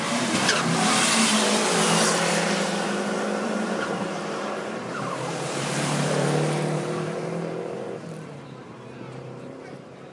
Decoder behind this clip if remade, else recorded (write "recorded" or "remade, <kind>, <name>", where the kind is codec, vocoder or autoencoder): remade, vocoder, BigVGAN v2